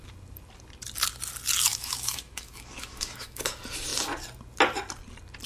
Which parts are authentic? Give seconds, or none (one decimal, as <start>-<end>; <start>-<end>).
0.0-1.7; 3.4-5.5